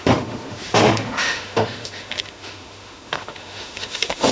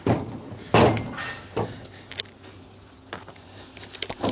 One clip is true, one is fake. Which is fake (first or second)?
first